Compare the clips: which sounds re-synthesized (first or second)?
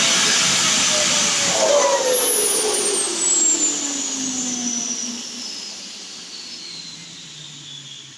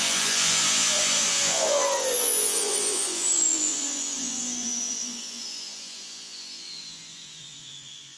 second